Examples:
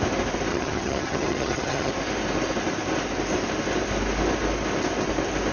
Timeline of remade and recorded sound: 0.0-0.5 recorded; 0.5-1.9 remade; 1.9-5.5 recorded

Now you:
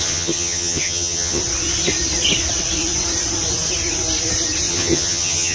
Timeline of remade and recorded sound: 0.0-1.4 remade; 1.4-4.7 recorded; 4.7-5.5 remade

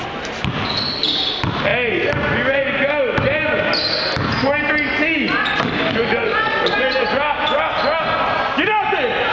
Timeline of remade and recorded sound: 0.0-9.3 recorded

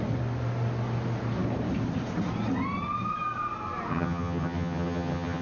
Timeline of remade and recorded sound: 0.0-3.9 recorded; 3.9-5.4 remade

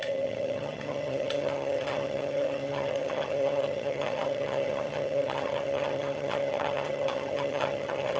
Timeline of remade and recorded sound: 0.0-8.2 remade

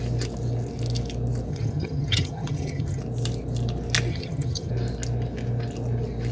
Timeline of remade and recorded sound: 0.0-1.5 recorded; 1.5-3.0 remade; 3.0-4.1 recorded; 4.1-4.7 remade; 4.7-6.3 recorded

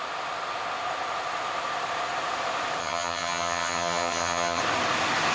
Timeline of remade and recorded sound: 0.0-2.8 recorded; 2.8-4.6 remade; 4.6-5.3 recorded